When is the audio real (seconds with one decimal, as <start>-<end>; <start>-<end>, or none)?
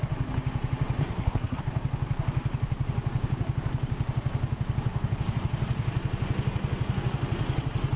0.0-1.0; 1.6-8.0